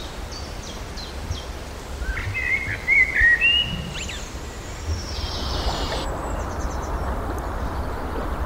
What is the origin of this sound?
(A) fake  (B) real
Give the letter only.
B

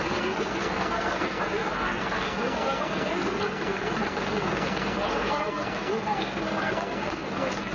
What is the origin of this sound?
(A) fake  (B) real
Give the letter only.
A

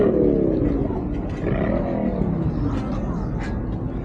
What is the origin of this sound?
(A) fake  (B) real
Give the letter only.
B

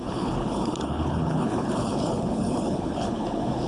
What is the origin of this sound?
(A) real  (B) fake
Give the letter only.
B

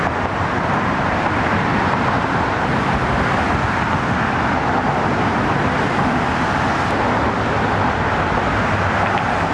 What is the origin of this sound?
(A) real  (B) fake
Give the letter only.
A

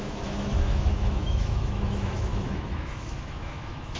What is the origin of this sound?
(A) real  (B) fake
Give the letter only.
B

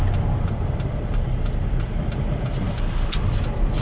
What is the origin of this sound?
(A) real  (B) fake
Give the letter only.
A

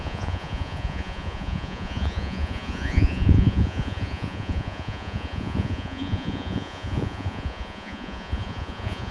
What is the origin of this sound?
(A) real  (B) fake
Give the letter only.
B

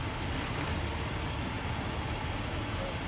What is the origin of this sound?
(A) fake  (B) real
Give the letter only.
B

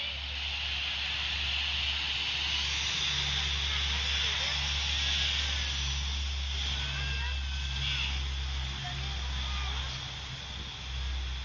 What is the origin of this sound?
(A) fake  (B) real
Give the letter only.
B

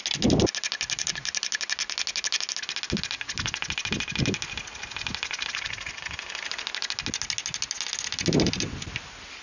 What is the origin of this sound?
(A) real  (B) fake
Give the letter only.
A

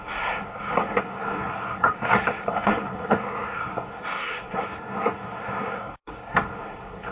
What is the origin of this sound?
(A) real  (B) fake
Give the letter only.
B